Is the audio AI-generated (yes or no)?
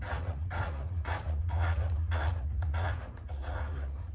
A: yes